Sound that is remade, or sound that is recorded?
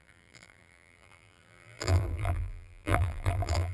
remade